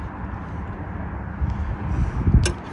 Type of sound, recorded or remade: recorded